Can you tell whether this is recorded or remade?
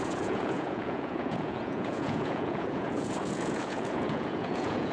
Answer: remade